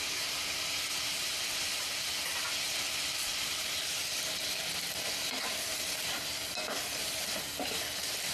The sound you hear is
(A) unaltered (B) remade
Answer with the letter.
A